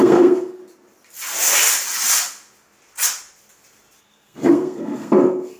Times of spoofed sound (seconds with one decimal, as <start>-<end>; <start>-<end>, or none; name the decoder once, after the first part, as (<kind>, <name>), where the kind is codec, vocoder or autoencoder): 0.0-0.6 (codec, SNAC); 4.0-5.6